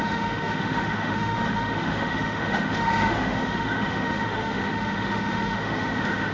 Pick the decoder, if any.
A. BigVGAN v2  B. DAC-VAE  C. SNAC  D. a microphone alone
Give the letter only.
B